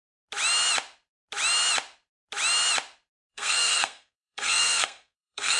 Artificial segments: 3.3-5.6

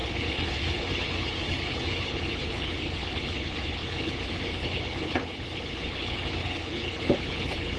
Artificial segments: 0.0-7.8

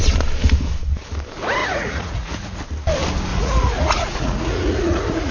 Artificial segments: 1.6-2.6; 3.3-5.3